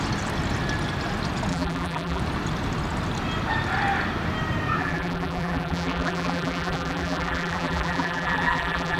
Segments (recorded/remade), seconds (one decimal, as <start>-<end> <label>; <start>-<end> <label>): 0.0-1.5 recorded; 1.5-2.2 remade; 2.2-4.8 recorded; 4.8-9.0 remade